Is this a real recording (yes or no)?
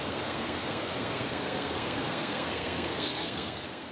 no